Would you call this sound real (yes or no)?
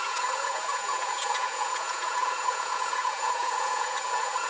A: no